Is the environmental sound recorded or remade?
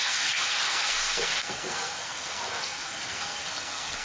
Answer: remade